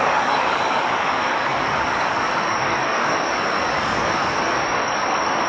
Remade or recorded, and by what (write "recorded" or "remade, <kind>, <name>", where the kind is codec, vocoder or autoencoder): remade, codec, DAC